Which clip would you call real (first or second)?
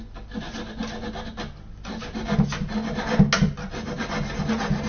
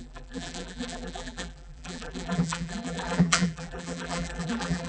first